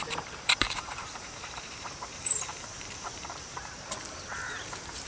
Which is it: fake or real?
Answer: fake